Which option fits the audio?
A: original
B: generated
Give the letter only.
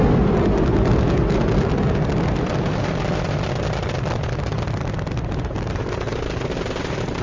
A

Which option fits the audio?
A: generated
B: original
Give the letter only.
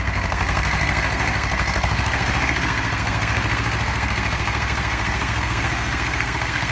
A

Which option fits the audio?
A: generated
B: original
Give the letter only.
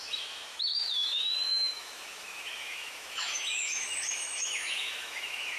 A